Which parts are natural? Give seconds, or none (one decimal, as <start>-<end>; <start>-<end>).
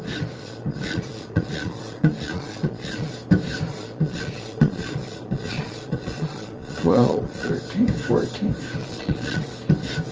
0.0-0.4; 3.1-3.7; 7.5-8.8; 9.5-10.1